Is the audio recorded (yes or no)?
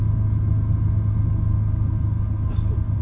yes